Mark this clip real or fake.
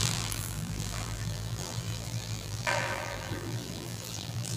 fake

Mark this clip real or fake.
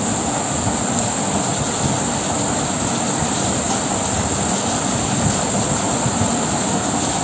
real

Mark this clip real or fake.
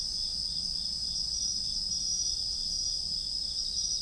real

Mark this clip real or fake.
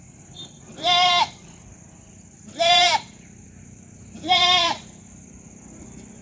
fake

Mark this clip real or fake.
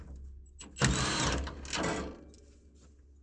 real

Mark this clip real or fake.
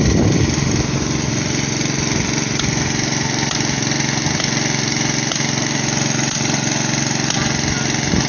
real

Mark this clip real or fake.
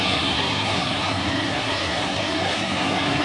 fake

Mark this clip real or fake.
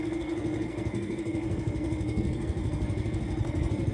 fake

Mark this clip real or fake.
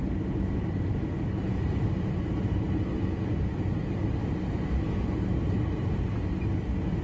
real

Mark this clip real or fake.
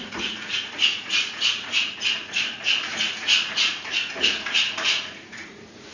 fake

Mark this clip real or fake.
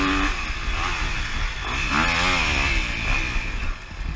real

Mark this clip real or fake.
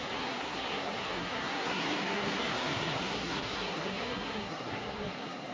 fake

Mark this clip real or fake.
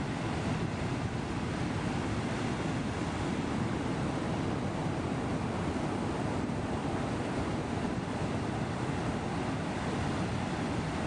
real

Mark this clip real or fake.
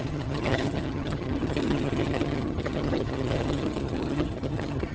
fake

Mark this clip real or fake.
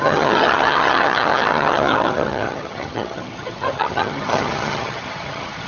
fake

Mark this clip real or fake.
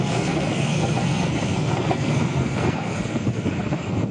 fake